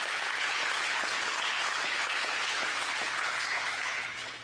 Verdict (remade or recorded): remade